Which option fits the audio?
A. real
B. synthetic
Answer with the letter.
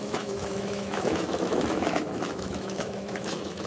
B